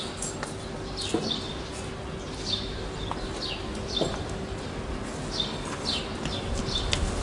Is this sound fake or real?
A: real